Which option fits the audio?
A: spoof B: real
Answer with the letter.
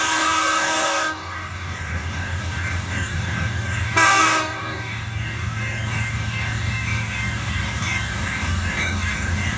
A